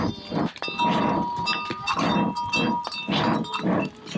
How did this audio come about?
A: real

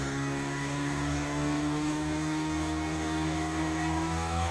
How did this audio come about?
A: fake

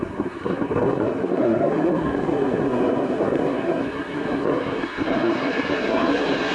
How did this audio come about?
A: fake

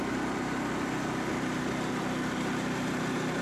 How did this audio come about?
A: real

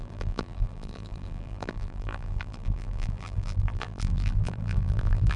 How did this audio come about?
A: fake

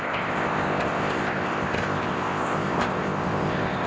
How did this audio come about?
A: fake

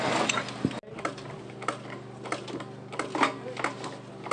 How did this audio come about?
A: real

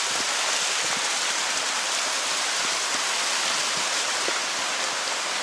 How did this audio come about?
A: real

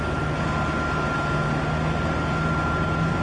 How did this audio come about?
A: real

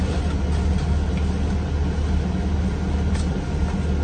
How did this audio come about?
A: real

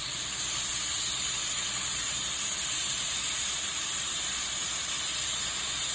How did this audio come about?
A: fake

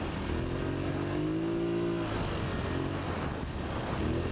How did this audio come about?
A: real